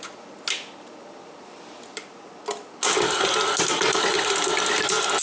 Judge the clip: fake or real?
real